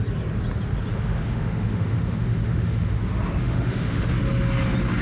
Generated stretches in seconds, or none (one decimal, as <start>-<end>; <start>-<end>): 0.9-3.0; 3.4-4.1